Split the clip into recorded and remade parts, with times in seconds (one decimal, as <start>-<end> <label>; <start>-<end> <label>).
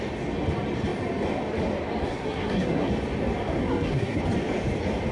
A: 0.0-2.1 recorded; 2.1-2.9 remade; 2.9-3.6 recorded; 3.6-4.2 remade; 4.2-5.1 recorded